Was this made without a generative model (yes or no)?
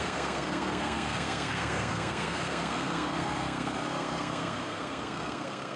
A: no